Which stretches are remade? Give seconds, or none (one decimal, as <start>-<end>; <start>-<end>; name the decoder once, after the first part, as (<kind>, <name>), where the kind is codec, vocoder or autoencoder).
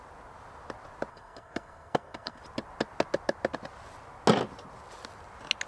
1.1-2.4 (codec, SNAC)